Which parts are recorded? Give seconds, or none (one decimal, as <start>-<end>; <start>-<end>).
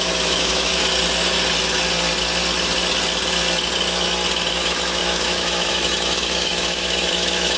0.8-4.5